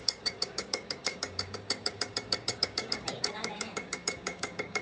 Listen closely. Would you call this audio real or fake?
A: fake